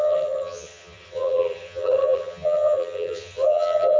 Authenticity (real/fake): fake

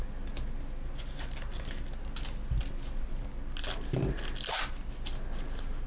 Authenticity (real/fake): real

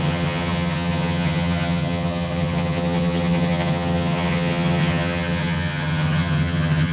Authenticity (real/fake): fake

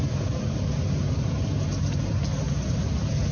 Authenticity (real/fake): real